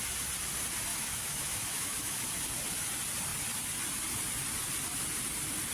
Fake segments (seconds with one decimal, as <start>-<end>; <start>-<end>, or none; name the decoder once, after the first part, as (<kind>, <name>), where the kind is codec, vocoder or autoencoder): 0.9-2.2 (autoencoder, DAC-VAE)